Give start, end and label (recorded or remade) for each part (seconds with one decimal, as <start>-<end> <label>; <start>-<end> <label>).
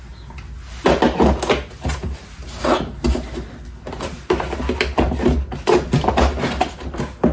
0.0-7.3 recorded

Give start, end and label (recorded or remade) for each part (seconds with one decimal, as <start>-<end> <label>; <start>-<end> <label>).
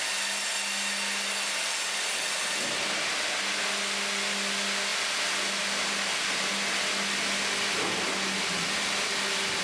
0.0-9.6 recorded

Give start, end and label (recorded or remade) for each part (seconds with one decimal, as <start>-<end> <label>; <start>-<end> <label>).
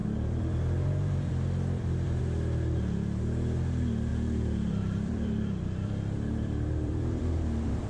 0.0-2.2 remade; 2.2-4.1 recorded; 4.1-7.9 remade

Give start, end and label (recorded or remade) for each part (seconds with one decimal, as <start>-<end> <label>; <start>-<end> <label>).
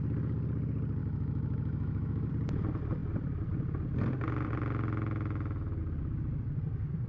0.0-1.0 recorded; 1.0-2.3 remade; 2.3-7.1 recorded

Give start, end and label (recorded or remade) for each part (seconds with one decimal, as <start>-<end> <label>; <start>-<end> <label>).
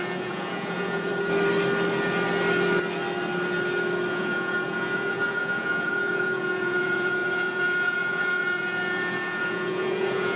0.0-1.1 remade; 1.1-4.1 recorded; 4.1-10.4 remade